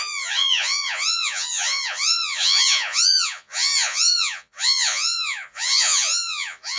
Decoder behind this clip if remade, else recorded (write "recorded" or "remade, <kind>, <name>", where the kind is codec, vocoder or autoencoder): remade, vocoder, Vocos